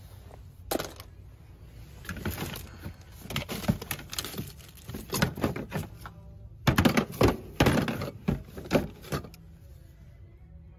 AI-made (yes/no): no